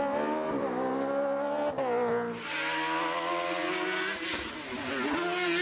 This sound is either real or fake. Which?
real